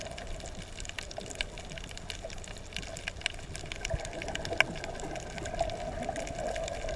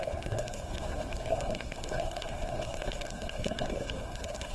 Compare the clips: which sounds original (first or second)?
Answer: first